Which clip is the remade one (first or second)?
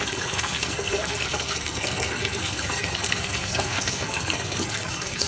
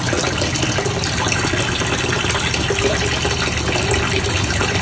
first